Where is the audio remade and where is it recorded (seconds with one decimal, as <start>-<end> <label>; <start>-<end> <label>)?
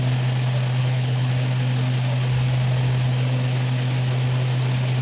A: 0.0-0.8 recorded; 0.8-1.3 remade; 1.3-5.0 recorded